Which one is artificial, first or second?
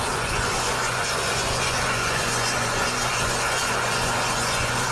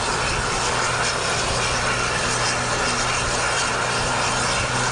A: first